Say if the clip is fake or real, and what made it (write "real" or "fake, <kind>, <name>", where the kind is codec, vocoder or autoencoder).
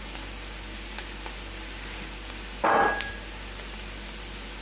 real